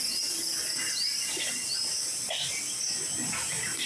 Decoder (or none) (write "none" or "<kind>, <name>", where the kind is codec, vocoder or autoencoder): none